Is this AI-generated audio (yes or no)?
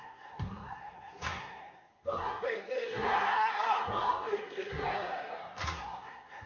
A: yes